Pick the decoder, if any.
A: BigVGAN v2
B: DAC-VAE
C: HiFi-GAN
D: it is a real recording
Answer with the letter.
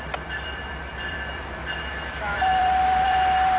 A